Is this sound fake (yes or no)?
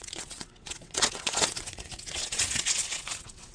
yes